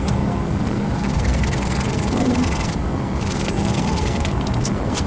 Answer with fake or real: fake